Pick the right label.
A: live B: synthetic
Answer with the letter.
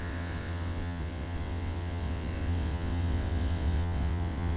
B